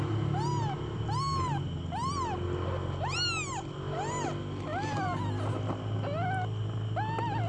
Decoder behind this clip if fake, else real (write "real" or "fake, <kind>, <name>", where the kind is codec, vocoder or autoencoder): real